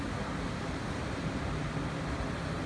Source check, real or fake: real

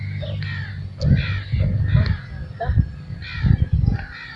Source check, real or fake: real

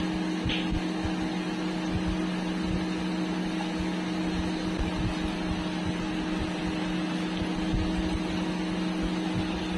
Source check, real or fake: real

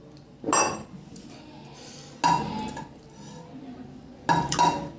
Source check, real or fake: real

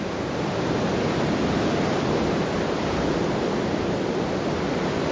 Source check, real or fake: real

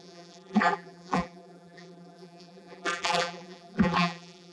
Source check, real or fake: fake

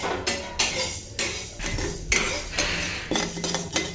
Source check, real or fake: real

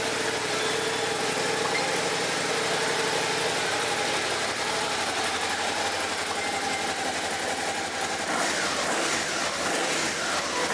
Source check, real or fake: real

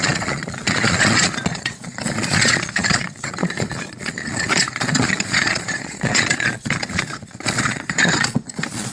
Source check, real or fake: fake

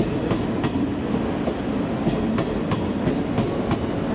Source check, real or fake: real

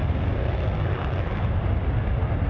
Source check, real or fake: real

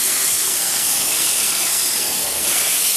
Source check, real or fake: fake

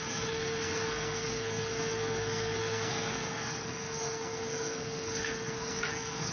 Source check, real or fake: fake